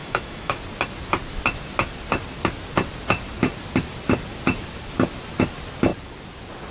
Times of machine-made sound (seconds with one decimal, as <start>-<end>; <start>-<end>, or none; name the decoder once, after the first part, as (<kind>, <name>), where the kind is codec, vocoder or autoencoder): 0.0-0.6 (autoencoder, DAC-VAE)